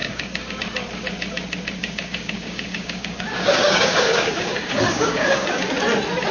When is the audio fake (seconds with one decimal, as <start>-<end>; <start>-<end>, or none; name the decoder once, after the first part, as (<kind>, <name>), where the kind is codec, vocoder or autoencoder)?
0.0-0.5 (codec, DAC); 1.8-5.6